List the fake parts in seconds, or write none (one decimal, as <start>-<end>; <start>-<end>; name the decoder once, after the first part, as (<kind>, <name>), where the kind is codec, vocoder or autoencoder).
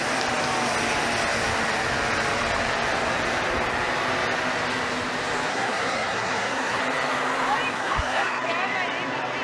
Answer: 5.5-6.8 (codec, SNAC); 7.7-8.4